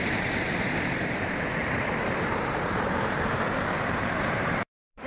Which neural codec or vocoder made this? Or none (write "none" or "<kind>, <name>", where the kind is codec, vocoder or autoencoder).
vocoder, BigVGAN v2